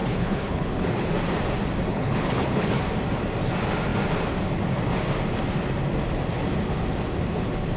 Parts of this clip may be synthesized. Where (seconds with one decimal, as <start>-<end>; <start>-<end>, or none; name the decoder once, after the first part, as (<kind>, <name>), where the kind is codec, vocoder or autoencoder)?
0.0-1.1 (codec, HILCodec); 1.9-2.8